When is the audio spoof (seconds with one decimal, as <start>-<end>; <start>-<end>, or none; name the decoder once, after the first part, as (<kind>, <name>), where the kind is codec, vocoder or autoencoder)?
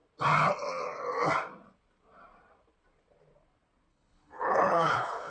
3.9-5.3 (codec, HILCodec)